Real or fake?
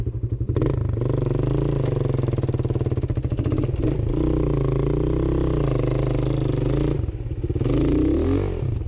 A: real